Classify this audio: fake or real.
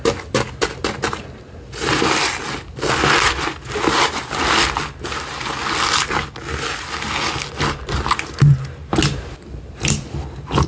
real